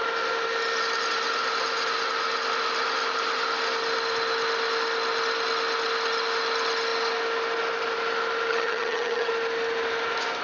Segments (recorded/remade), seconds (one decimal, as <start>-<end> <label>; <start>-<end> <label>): 0.0-8.5 recorded; 8.5-9.3 remade; 9.3-10.4 recorded